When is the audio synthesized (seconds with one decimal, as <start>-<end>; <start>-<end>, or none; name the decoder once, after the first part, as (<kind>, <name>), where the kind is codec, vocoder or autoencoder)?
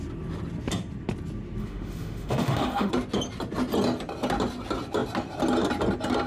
1.6-2.9 (autoencoder, DAC-VAE)